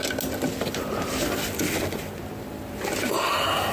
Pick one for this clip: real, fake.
real